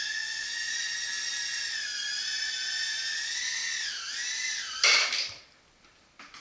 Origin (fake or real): real